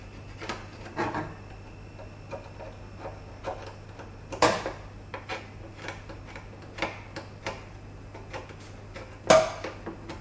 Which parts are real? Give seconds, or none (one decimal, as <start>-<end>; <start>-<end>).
0.0-10.2